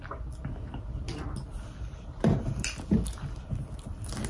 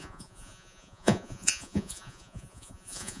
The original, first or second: first